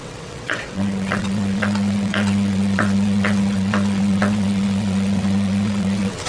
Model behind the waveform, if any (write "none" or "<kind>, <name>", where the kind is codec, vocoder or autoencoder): vocoder, WaveNeXt